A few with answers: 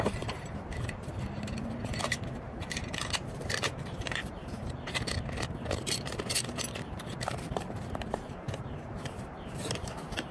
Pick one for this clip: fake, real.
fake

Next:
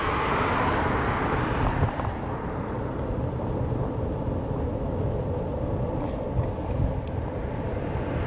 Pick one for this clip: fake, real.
real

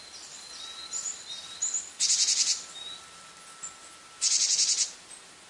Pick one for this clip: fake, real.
real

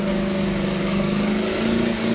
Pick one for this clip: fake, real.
fake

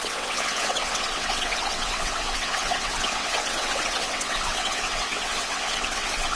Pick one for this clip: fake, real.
fake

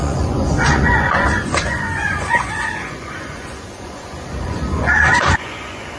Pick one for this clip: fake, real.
fake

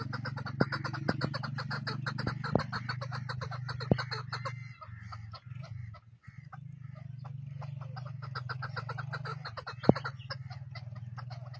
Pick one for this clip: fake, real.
real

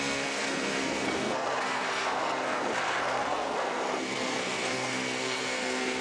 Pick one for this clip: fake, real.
fake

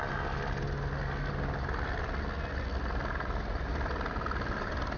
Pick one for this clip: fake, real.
real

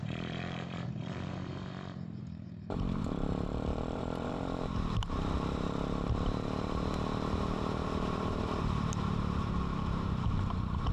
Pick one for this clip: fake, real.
fake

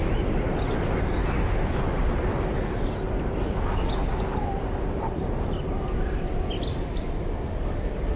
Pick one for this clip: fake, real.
real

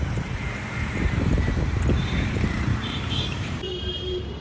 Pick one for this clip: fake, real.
fake